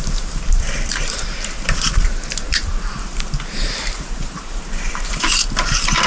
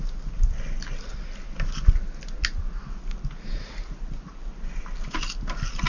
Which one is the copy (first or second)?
first